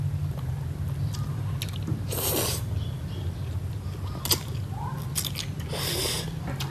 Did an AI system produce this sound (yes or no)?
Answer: no